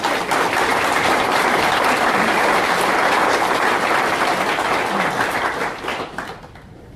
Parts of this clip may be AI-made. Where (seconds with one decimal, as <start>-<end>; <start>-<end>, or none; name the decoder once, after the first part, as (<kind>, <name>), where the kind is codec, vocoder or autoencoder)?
0.7-4.0 (vocoder, BigVGAN v2)